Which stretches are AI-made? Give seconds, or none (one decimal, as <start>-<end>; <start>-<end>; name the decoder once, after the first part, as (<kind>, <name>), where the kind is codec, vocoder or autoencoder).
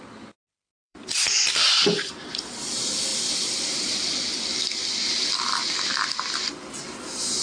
0.8-2.4 (vocoder, BigVGAN v2); 3.1-7.0